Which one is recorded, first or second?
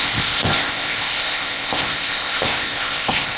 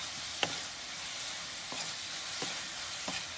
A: second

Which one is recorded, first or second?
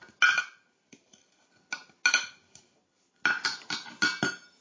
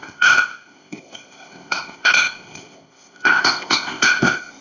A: first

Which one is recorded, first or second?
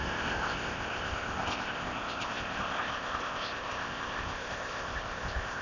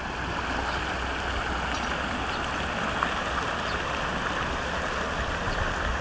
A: second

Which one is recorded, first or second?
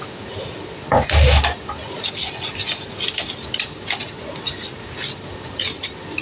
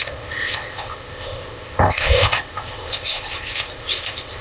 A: first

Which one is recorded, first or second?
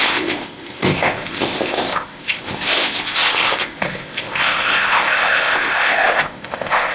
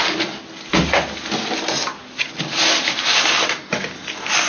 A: second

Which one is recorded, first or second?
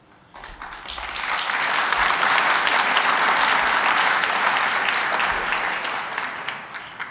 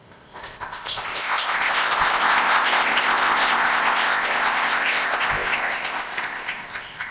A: first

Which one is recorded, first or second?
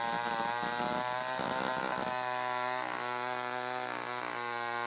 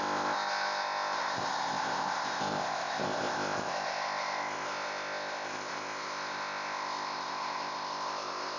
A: first